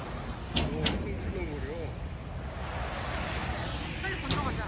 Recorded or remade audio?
recorded